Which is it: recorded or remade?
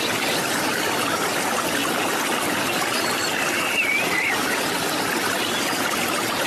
recorded